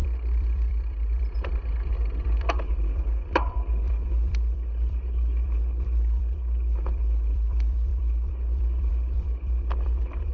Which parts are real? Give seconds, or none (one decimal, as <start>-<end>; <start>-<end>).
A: none